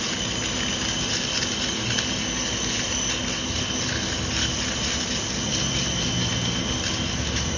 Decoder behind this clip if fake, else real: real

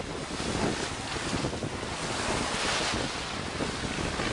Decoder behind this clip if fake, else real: real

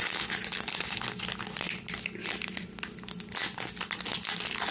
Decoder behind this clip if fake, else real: real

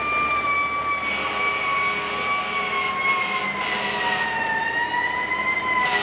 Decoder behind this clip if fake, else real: real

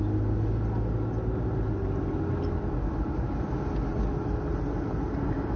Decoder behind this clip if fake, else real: real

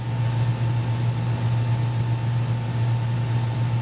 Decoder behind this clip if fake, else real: real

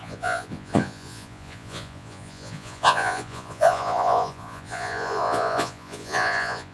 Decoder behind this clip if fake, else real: fake, vocoder, Vocos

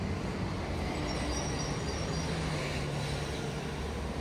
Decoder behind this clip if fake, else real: real